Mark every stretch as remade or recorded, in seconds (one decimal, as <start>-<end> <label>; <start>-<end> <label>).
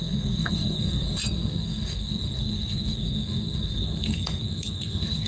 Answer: 0.0-5.3 remade